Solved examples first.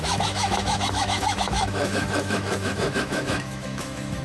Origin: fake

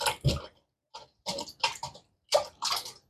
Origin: real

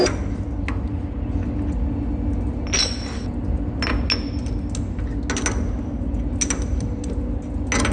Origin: real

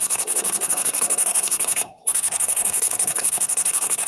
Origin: fake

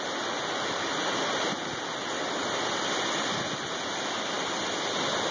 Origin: real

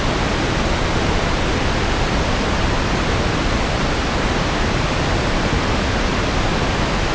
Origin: real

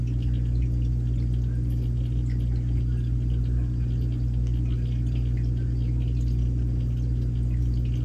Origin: real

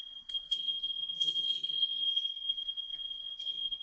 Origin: fake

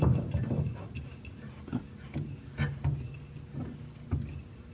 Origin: real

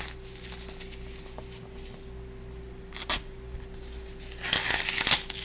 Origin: real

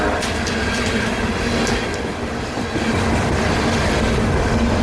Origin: real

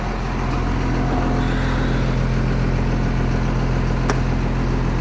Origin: real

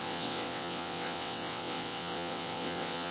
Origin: fake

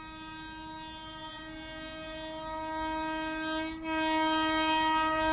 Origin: real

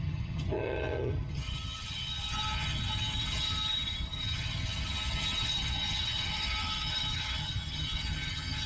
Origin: fake